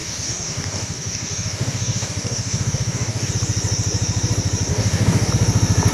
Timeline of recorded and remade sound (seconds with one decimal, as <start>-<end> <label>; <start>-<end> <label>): 0.0-3.3 remade; 3.3-4.7 recorded; 4.7-5.3 remade; 5.3-5.9 recorded